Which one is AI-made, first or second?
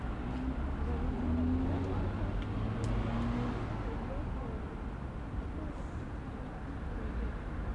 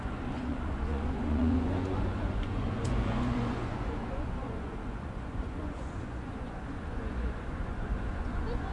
second